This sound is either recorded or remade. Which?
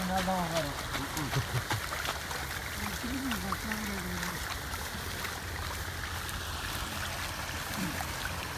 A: recorded